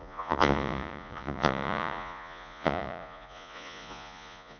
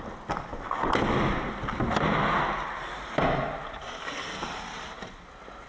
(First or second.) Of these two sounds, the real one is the second